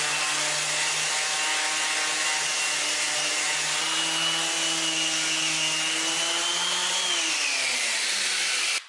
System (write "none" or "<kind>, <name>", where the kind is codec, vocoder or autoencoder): none